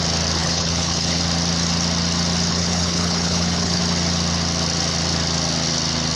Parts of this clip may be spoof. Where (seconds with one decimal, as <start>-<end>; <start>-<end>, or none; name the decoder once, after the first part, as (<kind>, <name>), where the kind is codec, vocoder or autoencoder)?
0.4-1.2 (codec, HILCodec); 2.5-3.8